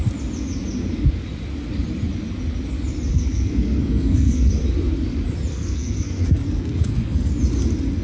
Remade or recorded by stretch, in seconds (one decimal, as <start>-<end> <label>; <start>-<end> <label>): 0.0-3.1 recorded; 3.1-4.5 remade; 4.5-5.5 recorded; 5.5-7.3 remade; 7.3-8.0 recorded